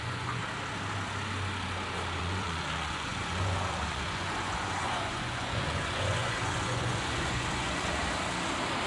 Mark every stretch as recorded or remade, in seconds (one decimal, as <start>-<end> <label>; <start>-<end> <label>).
0.0-0.4 remade; 0.4-2.2 recorded; 2.2-8.0 remade; 8.0-8.9 recorded

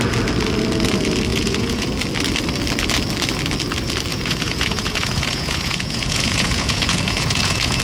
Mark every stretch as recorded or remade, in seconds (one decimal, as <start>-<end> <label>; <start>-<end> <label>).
0.0-1.3 recorded; 1.3-1.9 remade; 1.9-4.1 recorded; 4.1-7.8 remade

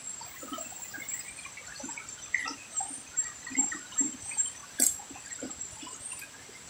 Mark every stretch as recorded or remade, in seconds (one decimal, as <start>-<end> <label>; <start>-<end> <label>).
0.0-1.9 remade; 1.9-3.9 recorded; 3.9-6.7 remade

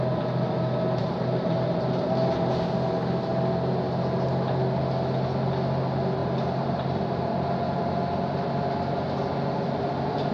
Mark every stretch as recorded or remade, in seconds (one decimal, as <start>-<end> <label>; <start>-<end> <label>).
0.0-1.0 recorded; 1.0-2.1 remade; 2.1-6.2 recorded; 6.2-7.3 remade; 7.3-10.3 recorded